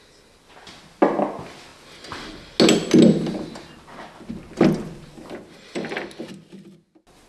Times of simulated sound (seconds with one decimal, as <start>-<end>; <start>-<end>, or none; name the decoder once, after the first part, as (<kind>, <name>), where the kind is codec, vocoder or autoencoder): none